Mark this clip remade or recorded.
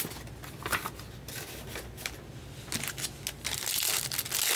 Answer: recorded